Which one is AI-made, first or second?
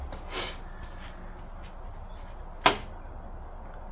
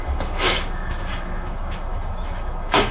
second